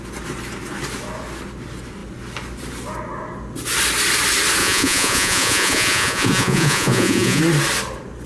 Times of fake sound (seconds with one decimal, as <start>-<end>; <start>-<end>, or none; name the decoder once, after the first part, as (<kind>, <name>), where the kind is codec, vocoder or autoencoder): 4.6-7.4 (vocoder, Vocos)